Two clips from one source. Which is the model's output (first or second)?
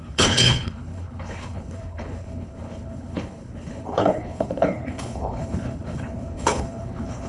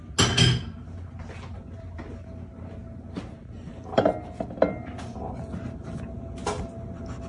first